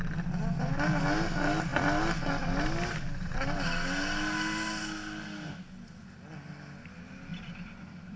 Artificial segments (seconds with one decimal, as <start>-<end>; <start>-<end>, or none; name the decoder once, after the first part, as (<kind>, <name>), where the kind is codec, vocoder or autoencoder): 1.7-2.2 (vocoder, BigVGAN v2); 7.3-8.2

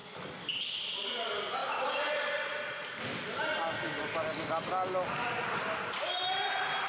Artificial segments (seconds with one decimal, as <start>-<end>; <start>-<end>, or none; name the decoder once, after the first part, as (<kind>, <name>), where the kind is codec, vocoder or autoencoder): none

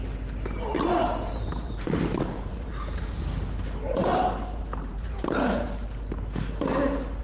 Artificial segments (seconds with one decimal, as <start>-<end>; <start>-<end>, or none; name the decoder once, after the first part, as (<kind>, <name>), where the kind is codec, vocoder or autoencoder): 0.7-2.7 (vocoder, BigVGAN v2); 4.0-5.6

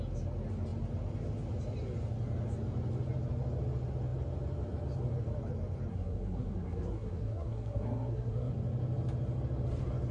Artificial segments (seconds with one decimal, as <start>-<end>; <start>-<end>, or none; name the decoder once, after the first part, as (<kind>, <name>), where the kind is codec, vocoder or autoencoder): 5.9-8.5 (codec, SNAC)

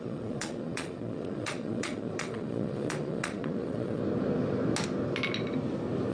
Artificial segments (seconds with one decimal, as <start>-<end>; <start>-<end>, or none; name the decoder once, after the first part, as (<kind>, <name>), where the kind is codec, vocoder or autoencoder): 0.0-4.0 (vocoder, Vocos)